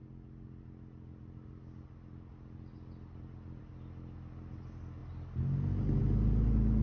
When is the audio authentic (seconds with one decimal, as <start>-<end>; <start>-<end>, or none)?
0.0-6.8